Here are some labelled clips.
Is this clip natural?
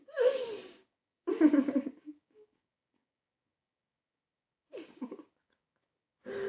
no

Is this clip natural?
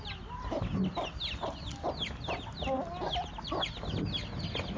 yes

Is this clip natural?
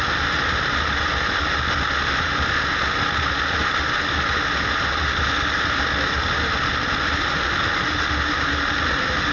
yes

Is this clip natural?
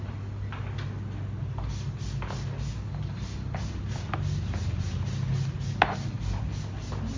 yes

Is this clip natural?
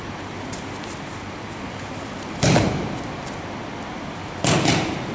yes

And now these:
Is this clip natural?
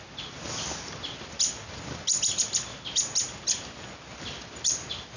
yes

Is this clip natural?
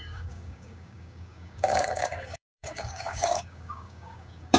no